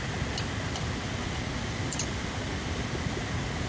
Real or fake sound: real